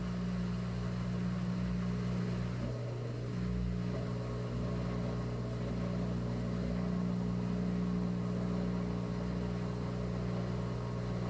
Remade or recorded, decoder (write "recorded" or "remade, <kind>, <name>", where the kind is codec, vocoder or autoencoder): recorded